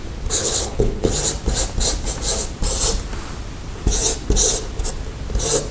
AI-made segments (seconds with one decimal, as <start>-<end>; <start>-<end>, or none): 0.4-1.1